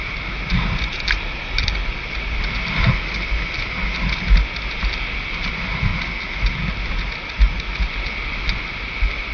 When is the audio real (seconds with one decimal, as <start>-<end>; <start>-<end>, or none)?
0.0-9.3